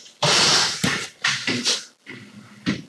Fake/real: real